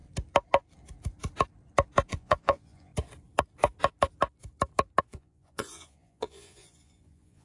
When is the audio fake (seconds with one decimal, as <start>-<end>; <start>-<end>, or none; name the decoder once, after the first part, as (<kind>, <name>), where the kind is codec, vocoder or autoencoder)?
2.1-2.9 (vocoder, Vocos); 5.0-7.4